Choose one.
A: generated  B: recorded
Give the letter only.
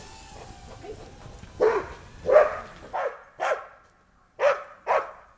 B